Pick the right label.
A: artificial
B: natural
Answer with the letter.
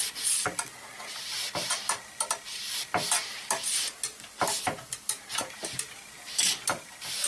B